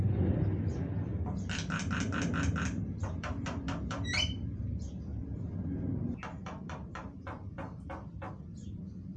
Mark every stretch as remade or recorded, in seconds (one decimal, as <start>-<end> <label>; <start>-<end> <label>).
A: 0.0-1.1 remade; 1.1-3.2 recorded; 3.2-9.2 remade